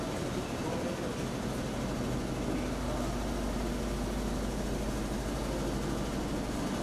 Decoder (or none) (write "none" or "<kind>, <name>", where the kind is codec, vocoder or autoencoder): none